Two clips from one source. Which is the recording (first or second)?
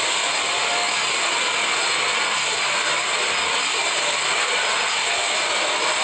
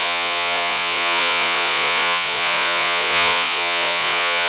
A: first